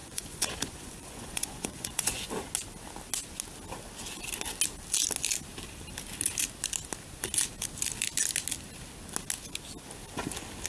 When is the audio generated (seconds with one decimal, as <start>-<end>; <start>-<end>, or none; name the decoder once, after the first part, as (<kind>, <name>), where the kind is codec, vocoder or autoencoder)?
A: 0.0-2.3 (vocoder, Vocos)

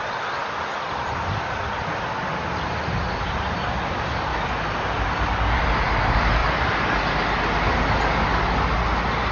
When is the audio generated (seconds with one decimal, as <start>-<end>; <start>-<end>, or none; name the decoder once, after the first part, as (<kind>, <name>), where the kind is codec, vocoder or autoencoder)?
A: none